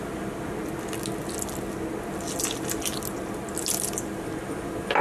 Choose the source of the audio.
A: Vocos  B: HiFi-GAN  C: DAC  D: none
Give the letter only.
D